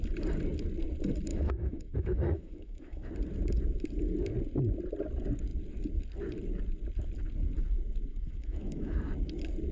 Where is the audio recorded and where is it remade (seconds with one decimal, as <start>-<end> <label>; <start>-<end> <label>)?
0.0-1.3 recorded; 1.3-3.1 remade; 3.1-8.1 recorded; 8.1-9.0 remade; 9.0-9.7 recorded